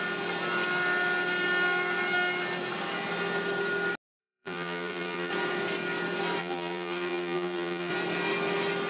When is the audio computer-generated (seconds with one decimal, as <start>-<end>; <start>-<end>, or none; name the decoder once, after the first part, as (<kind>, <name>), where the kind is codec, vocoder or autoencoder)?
4.2-5.3 (vocoder, BigVGAN v2); 6.4-7.9